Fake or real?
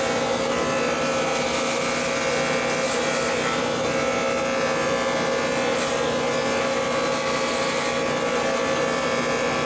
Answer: real